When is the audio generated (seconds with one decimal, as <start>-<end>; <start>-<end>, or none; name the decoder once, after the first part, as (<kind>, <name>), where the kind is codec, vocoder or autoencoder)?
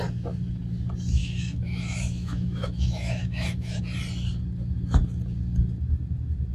1.2-3.8 (autoencoder, DAC-VAE)